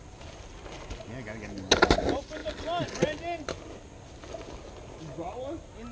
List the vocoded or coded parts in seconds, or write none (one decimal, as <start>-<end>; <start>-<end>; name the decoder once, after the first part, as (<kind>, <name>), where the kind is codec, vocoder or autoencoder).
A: none